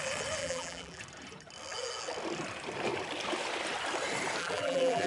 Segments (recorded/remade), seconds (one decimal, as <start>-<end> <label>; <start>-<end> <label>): 0.0-0.4 recorded; 0.4-1.0 remade; 1.0-4.4 recorded; 4.4-5.1 remade